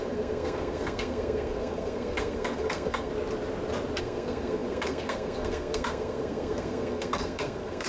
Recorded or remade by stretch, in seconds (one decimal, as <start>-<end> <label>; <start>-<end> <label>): 0.0-3.1 remade; 3.1-4.0 recorded; 4.0-7.9 remade